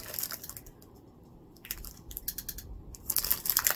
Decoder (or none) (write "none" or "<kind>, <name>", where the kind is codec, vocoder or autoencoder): none